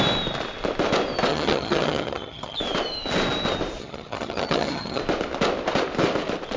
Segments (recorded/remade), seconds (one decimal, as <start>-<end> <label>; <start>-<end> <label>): 0.0-1.3 recorded; 1.3-2.6 remade; 2.6-3.8 recorded; 3.8-5.0 remade; 5.0-6.6 recorded